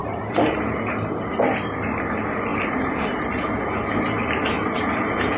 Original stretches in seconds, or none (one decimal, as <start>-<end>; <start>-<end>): 2.0-2.5